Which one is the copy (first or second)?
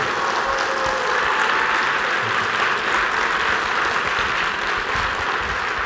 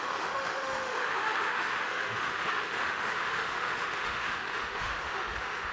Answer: second